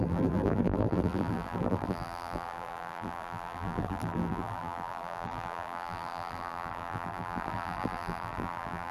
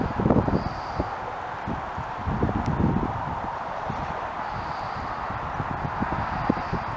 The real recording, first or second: second